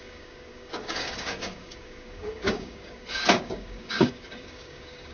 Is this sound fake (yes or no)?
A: yes